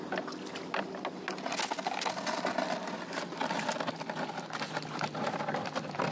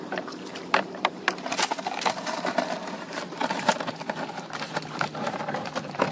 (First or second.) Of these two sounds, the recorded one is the first